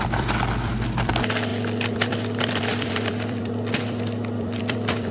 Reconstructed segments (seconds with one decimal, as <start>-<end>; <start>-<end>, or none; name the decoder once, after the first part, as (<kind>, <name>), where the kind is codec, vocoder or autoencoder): 0.0-5.1 (vocoder, BigVGAN v2)